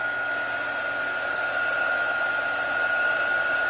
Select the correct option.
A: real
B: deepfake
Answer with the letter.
A